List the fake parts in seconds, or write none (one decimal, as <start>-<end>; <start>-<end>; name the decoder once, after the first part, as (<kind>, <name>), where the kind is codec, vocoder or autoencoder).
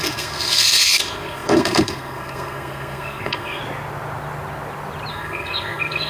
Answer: 0.0-3.6 (codec, SNAC); 5.1-6.1